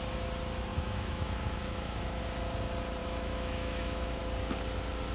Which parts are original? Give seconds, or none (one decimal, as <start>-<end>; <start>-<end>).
0.0-0.7; 2.2-3.0; 4.2-5.1